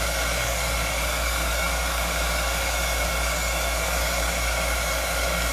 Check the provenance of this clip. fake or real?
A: fake